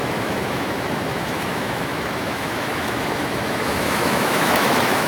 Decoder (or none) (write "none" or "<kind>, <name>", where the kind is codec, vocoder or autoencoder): autoencoder, DAC-VAE